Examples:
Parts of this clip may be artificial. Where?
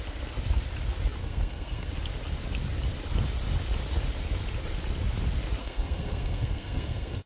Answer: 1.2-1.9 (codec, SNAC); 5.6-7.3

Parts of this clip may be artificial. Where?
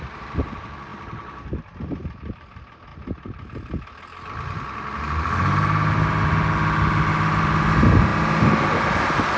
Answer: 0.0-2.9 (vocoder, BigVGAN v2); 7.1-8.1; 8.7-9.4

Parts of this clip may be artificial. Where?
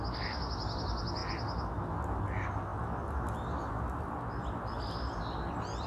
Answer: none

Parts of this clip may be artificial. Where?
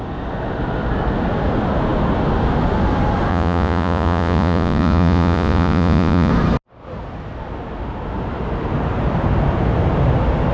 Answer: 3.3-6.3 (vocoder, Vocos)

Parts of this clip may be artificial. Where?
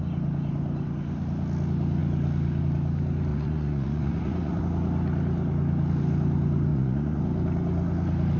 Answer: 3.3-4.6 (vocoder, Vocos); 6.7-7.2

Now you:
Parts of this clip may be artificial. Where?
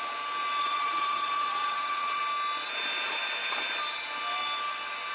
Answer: 0.6-2.2 (vocoder, WaveNeXt)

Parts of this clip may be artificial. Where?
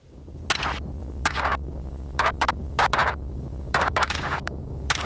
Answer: 0.0-0.4 (codec, DAC); 1.0-5.1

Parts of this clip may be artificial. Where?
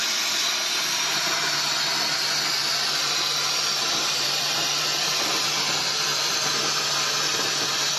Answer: 2.7-6.5 (vocoder, BigVGAN v2)